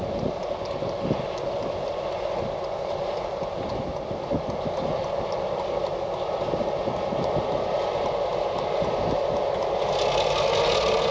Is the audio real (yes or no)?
yes